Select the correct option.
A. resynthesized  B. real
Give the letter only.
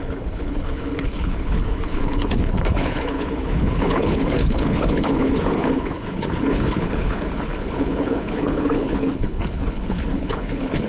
A